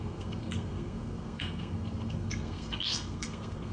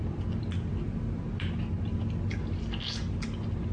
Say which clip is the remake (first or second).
first